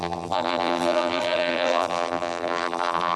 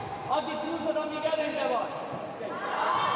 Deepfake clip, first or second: first